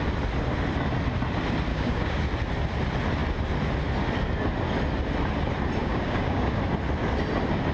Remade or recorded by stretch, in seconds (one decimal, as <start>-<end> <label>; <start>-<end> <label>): 0.0-1.7 recorded; 1.7-2.2 remade; 2.2-5.8 recorded; 5.8-6.6 remade; 6.6-7.7 recorded